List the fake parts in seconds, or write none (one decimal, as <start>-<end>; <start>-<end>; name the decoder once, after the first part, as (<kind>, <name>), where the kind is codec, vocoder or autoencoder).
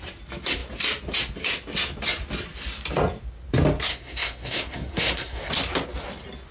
3.9-5.5 (codec, SNAC)